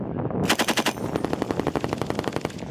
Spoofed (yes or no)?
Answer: no